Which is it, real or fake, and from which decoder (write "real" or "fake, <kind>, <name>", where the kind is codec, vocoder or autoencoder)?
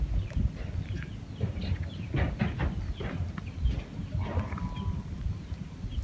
real